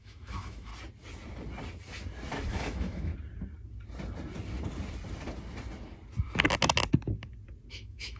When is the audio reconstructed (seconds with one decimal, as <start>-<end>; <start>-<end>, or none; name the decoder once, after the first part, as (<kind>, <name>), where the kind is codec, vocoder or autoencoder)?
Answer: 0.0-0.7 (autoencoder, DAC-VAE); 2.5-3.1; 7.7-8.2